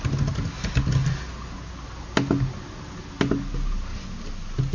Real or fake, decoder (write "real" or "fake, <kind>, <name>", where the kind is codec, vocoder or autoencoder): real